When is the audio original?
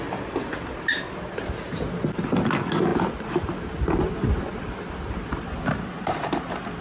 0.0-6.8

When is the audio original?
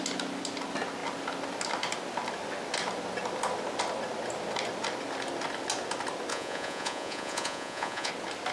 0.0-6.3; 8.1-8.5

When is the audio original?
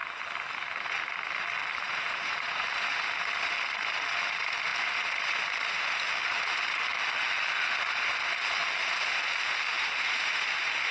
0.0-1.7; 6.9-7.7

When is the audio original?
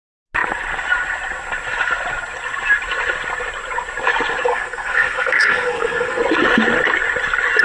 0.0-4.5; 6.2-7.6